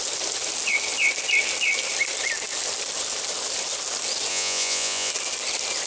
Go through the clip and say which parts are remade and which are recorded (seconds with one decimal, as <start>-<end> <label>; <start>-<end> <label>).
0.0-4.3 recorded; 4.3-5.1 remade; 5.1-5.9 recorded